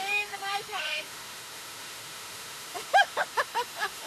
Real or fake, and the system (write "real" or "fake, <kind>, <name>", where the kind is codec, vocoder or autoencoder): fake, autoencoder, DAC-VAE